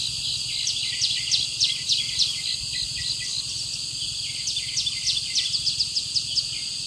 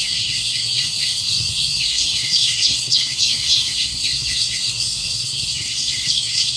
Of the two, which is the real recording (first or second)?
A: first